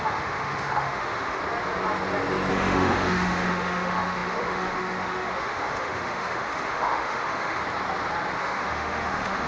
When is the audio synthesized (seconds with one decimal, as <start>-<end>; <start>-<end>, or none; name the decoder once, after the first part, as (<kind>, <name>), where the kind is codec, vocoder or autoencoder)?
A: 0.0-1.4 (autoencoder, DAC-VAE); 2.5-7.6; 8.4-9.5